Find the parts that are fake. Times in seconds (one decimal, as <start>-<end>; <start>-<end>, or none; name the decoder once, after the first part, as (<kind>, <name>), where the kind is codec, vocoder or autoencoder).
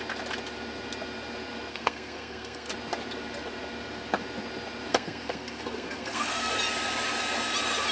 1.7-2.7 (codec, SNAC); 4.9-6.5